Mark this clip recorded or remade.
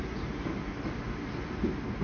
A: recorded